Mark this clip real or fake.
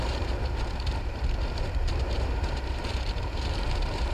fake